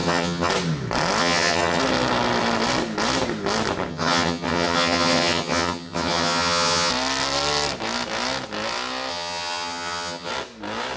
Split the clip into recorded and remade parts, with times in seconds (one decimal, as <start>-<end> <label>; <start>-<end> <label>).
0.0-0.5 remade; 0.5-1.2 recorded; 1.2-1.8 remade; 1.8-3.9 recorded; 3.9-6.9 remade; 6.9-9.1 recorded; 9.1-10.3 remade; 10.3-11.0 recorded